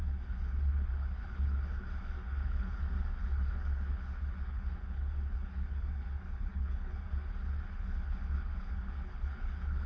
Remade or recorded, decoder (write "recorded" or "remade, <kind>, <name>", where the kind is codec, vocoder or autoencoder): remade, codec, HILCodec